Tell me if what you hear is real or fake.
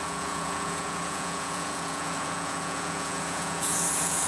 fake